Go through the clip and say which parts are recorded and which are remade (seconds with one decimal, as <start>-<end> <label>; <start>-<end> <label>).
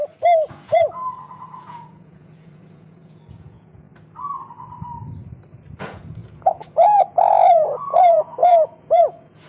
0.0-0.5 recorded; 0.5-3.9 remade; 3.9-5.8 recorded; 5.8-9.5 remade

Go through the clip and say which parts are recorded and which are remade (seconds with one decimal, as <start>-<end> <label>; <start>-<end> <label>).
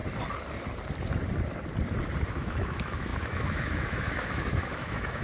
0.0-2.2 recorded; 2.2-5.2 remade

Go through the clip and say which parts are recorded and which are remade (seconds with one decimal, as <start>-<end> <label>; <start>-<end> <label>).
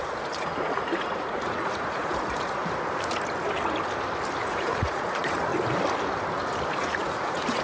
0.0-2.6 remade; 2.6-4.4 recorded; 4.4-5.5 remade; 5.5-6.8 recorded; 6.8-7.6 remade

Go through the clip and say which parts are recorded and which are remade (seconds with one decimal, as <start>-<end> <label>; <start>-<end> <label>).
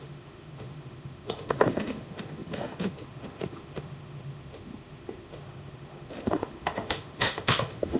0.0-8.0 remade